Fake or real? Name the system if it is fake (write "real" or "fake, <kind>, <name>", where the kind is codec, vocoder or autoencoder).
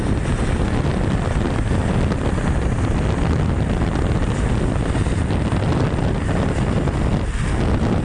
real